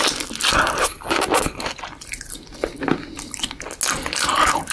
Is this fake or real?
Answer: real